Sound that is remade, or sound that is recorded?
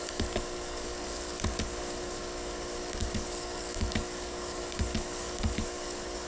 remade